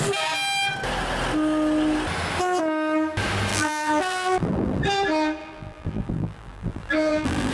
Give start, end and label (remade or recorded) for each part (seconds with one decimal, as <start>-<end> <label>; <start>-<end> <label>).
0.0-3.5 recorded; 3.5-4.8 remade; 4.8-5.4 recorded; 5.4-7.5 remade